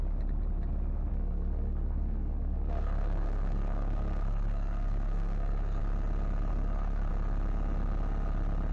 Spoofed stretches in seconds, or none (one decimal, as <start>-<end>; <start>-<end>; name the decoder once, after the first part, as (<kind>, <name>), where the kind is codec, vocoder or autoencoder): 1.1-5.8 (codec, SNAC); 6.5-7.1